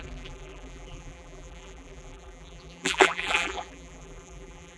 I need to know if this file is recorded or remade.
remade